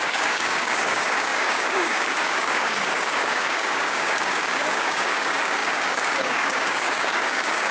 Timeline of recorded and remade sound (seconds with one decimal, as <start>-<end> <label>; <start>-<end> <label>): 0.0-7.7 remade